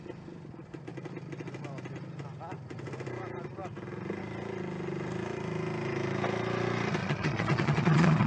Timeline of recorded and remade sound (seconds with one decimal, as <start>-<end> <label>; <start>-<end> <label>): 0.0-7.0 recorded; 7.0-8.3 remade